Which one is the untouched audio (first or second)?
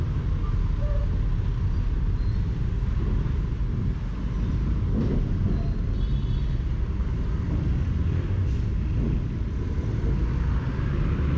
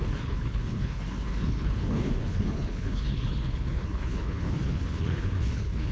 first